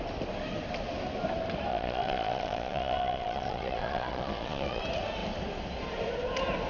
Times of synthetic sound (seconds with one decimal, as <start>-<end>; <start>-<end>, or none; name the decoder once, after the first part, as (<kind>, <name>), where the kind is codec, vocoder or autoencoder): 1.7-4.8 (vocoder, Vocos)